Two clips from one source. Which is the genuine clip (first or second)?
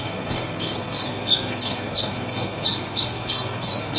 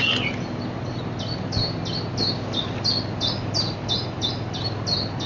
second